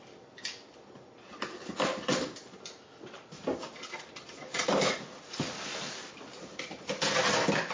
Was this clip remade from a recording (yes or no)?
no